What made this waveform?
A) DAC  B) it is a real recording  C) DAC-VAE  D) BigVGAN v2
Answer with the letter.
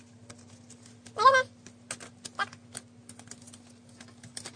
B